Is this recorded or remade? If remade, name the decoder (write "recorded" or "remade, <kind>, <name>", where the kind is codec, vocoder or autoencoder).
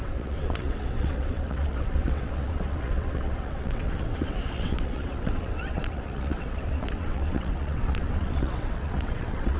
remade, vocoder, WaveNeXt